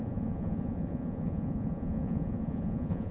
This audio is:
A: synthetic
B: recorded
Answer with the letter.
A